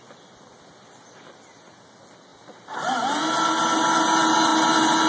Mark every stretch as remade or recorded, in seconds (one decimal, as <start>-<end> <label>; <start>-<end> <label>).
0.0-5.1 recorded